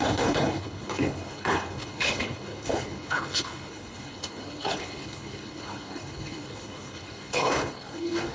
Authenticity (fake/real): fake